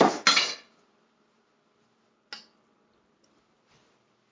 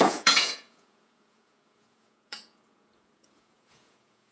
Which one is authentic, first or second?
first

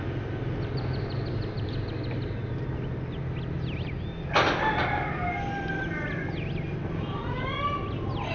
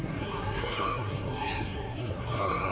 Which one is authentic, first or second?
first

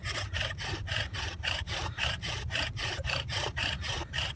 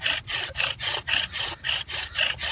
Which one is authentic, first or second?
second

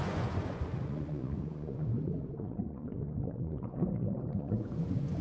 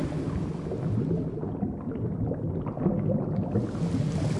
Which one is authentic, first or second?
second